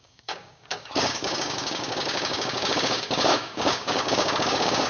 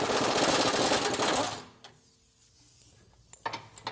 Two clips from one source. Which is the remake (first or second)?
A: first